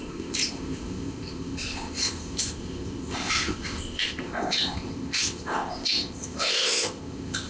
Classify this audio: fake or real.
fake